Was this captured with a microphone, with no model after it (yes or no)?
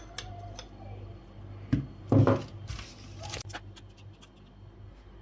yes